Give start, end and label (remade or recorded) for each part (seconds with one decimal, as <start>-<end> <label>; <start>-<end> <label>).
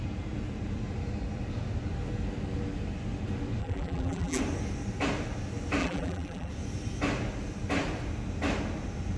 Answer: 0.0-3.6 recorded; 3.6-4.4 remade; 4.4-5.8 recorded; 5.8-6.5 remade; 6.5-9.2 recorded